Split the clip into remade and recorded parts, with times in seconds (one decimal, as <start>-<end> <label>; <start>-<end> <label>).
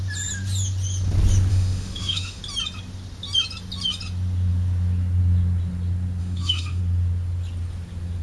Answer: 0.0-1.5 recorded; 1.5-2.4 remade; 2.4-6.2 recorded; 6.2-6.8 remade; 6.8-8.2 recorded